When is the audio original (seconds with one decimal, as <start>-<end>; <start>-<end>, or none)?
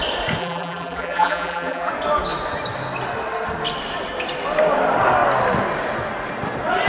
0.0-0.4; 1.9-6.9